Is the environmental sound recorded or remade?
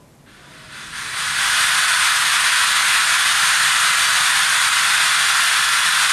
recorded